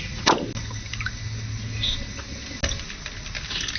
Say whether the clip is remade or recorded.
recorded